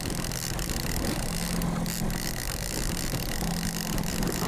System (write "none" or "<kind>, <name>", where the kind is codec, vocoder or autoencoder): none